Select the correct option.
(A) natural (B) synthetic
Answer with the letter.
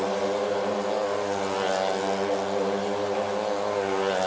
A